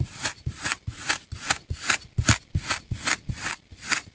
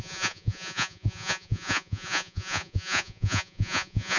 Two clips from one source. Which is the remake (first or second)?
second